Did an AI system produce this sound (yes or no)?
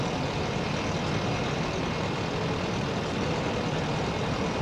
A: yes